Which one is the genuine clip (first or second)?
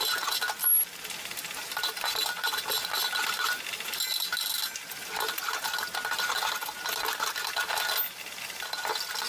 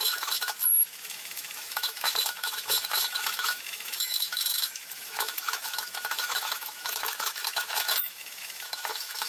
first